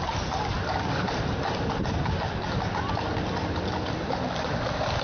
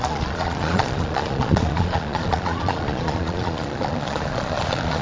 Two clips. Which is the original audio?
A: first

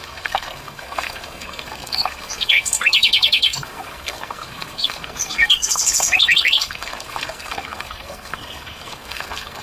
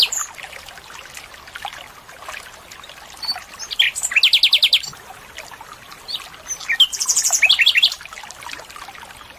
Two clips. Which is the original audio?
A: second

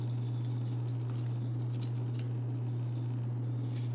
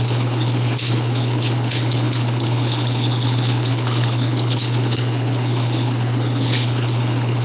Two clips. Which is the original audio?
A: first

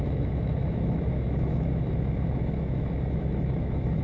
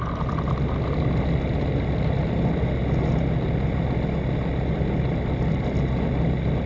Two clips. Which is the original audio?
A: second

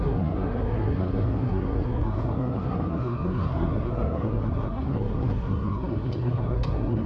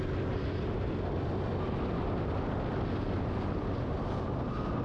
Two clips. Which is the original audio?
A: second